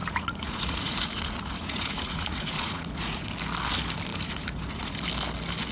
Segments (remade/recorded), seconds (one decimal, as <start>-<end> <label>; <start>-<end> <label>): 0.0-3.3 remade; 3.3-4.1 recorded; 4.1-5.0 remade; 5.0-5.7 recorded